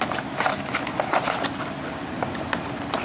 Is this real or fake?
real